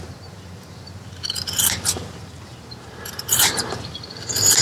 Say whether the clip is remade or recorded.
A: remade